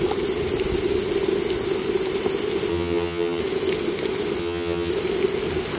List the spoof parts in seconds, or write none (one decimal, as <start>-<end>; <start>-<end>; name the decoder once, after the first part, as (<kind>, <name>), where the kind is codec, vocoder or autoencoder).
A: 2.7-3.4 (vocoder, HiFi-GAN); 4.4-4.9